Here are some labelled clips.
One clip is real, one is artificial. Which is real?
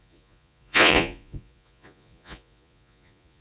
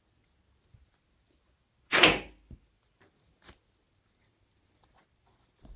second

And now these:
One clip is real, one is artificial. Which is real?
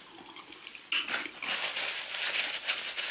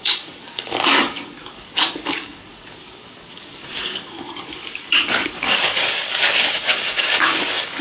first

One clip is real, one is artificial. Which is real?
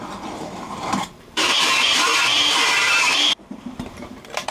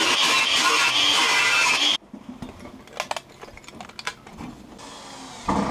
second